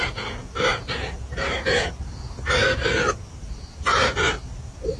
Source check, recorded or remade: recorded